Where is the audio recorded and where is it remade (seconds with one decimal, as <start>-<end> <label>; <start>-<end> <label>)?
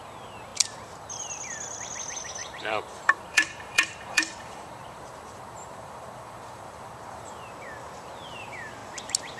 0.0-2.4 recorded; 2.4-7.5 remade; 7.5-9.4 recorded